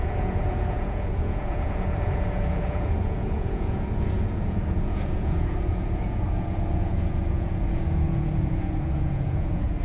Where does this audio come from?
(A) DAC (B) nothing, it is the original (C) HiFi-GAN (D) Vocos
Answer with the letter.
D